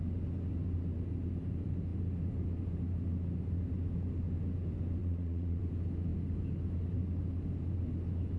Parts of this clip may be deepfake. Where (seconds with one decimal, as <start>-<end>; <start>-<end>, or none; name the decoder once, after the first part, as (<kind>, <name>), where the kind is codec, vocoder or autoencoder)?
5.0-5.6 (vocoder, Vocos)